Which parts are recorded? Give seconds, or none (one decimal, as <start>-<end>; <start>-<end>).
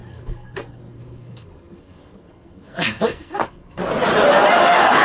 3.8-4.6